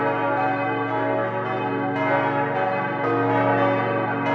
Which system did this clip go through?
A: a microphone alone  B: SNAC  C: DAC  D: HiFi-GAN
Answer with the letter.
A